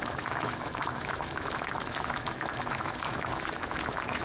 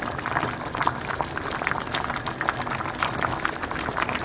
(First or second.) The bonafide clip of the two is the second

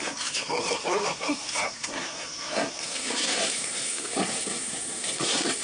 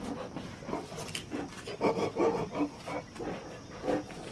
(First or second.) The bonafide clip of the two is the second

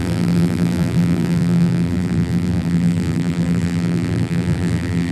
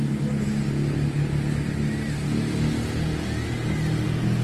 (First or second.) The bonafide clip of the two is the second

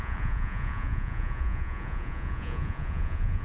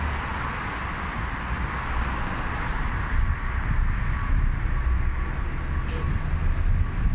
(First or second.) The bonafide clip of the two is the second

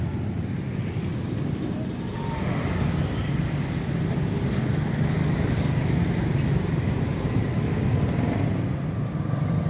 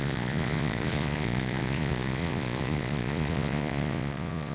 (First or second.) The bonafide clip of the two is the first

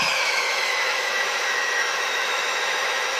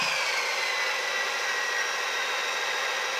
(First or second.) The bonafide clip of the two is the second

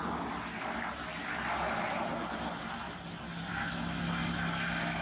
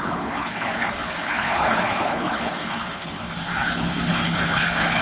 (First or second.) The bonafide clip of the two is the first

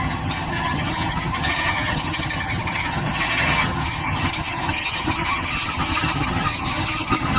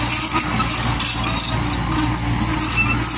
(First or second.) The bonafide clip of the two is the second